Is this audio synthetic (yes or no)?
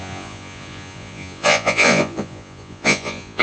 yes